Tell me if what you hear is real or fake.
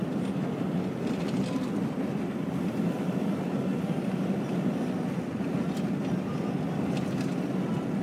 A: real